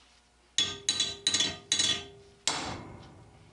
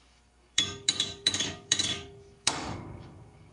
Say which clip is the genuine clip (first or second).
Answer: first